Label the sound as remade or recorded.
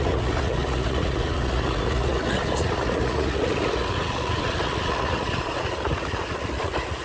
remade